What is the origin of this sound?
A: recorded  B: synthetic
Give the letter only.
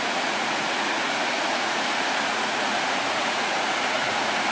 B